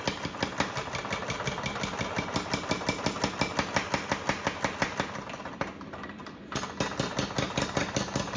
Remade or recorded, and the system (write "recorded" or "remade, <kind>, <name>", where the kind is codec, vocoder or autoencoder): recorded